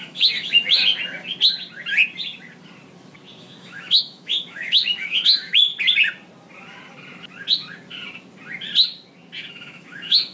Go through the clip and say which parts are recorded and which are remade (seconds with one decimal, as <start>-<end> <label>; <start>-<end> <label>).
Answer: 0.0-0.8 remade; 0.8-3.4 recorded; 3.4-5.7 remade; 5.7-9.5 recorded; 9.5-10.3 remade